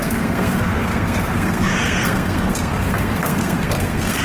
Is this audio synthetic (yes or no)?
yes